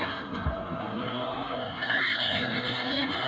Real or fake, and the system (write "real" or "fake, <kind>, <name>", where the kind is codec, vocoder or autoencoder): fake, codec, SNAC